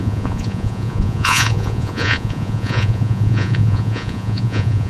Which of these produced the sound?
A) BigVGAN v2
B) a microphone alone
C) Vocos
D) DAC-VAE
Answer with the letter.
C